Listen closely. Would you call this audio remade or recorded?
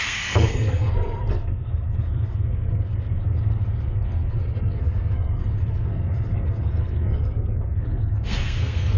remade